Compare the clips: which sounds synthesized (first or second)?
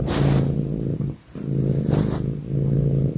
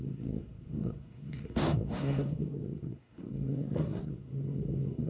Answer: second